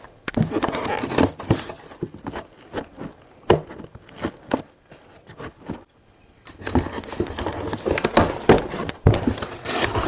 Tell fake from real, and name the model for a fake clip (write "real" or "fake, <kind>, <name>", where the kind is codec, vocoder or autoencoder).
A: real